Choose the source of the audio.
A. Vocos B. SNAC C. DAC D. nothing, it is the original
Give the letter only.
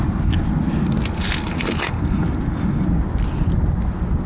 D